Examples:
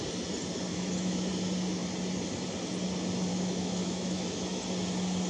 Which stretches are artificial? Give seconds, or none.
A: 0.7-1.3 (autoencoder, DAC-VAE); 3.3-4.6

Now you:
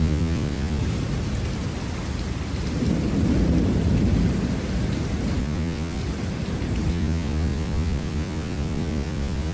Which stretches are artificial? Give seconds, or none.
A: 0.0-0.8 (vocoder, Vocos); 5.4-6.0; 6.9-9.5

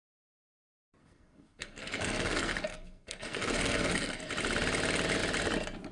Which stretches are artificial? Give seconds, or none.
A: 1.0-4.3 (codec, SNAC)

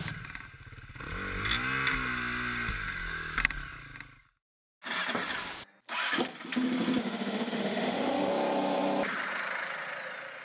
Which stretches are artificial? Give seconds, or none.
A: 7.0-8.3 (autoencoder, DAC-VAE)

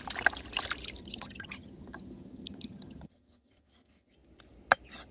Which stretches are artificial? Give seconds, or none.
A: 1.0-4.1 (vocoder, HiFi-GAN)